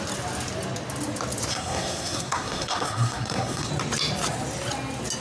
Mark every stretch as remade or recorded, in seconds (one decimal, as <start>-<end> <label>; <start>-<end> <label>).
0.0-1.5 recorded; 1.5-3.7 remade; 3.7-5.2 recorded